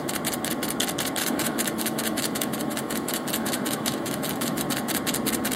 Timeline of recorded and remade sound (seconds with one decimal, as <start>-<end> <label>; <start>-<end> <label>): 0.0-1.2 recorded; 1.2-4.6 remade; 4.6-5.6 recorded